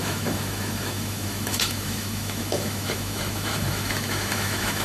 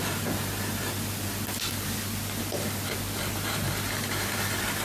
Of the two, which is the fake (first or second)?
first